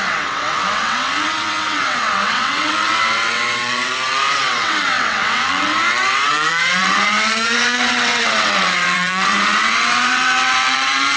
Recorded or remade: remade